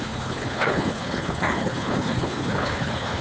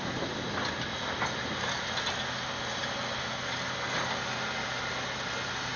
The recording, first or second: second